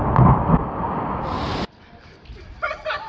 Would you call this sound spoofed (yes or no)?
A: no